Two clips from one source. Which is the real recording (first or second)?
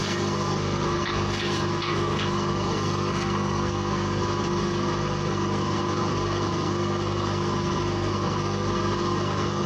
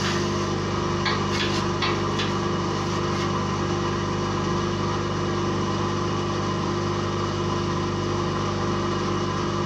second